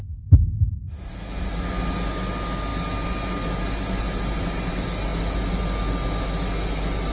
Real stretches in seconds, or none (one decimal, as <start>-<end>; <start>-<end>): 0.0-7.1